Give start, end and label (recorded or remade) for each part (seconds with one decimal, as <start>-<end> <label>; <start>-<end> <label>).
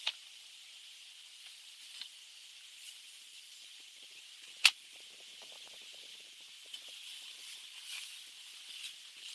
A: 0.0-3.3 recorded; 3.3-4.2 remade; 4.2-5.3 recorded; 5.3-7.6 remade; 7.6-9.3 recorded